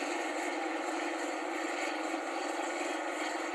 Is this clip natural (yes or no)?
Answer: no